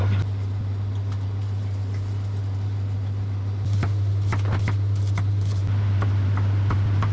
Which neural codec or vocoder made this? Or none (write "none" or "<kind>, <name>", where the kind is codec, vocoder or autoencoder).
none